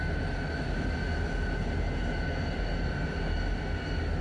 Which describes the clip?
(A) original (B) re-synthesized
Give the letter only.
A